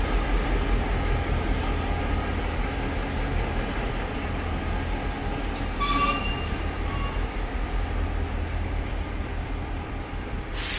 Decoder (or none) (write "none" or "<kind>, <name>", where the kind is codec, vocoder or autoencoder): none